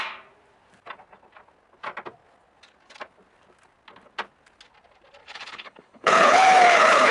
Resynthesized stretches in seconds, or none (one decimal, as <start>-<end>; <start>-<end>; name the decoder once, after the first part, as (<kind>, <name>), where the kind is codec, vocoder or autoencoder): 5.2-7.1 (codec, HILCodec)